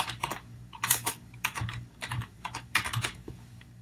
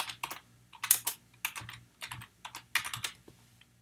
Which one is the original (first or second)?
second